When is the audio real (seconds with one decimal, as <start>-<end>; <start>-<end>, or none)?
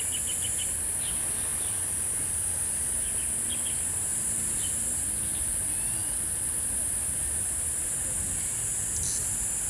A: 0.0-1.5; 2.5-4.1; 4.7-9.7